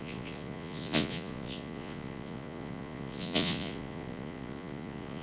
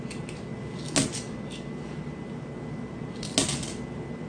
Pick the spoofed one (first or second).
first